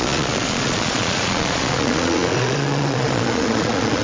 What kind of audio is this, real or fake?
fake